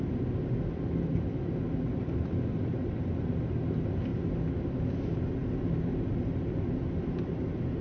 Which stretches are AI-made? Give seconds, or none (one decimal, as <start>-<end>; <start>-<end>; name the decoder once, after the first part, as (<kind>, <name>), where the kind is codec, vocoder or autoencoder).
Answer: none